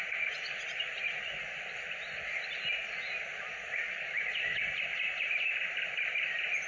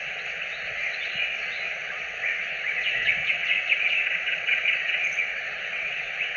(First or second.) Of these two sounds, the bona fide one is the first